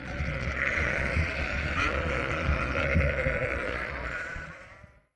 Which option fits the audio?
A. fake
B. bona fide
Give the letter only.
A